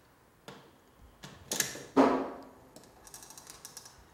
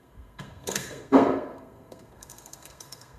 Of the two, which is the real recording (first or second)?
first